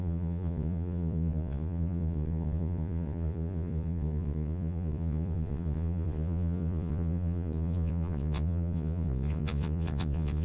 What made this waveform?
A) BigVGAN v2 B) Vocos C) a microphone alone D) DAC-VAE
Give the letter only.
B